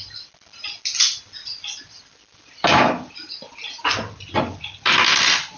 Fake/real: real